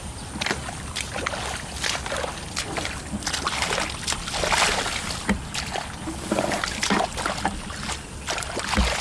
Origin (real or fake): real